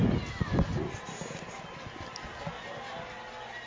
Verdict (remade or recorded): recorded